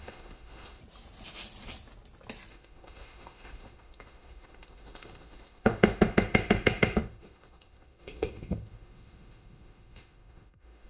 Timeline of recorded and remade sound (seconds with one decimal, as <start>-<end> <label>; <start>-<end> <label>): 0.0-0.8 remade; 0.8-2.5 recorded; 2.5-10.9 remade